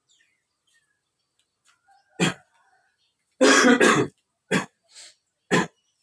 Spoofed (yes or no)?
no